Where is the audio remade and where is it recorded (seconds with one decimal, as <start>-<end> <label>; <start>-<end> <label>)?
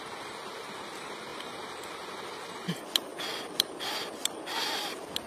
0.0-3.1 recorded; 3.1-3.9 remade; 3.9-5.3 recorded